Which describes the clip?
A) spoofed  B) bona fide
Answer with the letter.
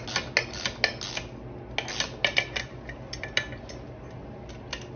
B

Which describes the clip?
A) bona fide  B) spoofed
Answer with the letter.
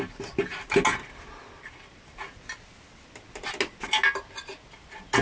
A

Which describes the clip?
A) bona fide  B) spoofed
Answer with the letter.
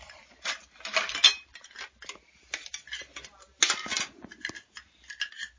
A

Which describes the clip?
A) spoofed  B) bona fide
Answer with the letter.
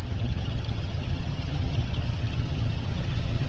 A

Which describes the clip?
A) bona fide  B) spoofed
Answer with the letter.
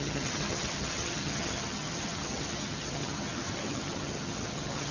B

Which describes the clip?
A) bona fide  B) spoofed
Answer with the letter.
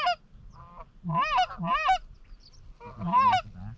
A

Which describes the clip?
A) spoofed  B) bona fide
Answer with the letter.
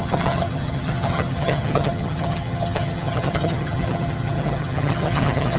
A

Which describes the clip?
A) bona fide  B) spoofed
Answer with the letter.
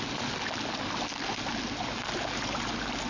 A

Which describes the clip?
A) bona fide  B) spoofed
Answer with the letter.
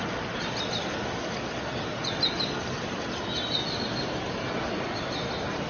A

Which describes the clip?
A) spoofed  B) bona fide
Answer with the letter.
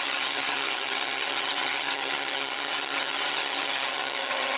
A